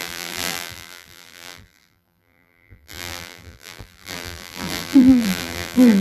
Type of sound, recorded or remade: remade